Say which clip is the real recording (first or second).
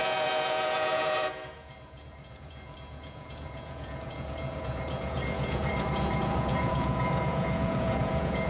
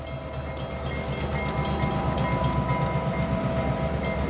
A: second